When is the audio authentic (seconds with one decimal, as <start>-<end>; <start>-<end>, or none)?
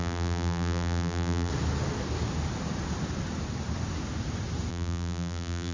1.5-4.7